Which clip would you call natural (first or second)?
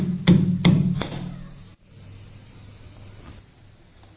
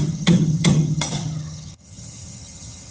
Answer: first